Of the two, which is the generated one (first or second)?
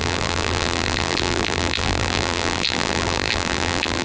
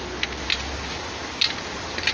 first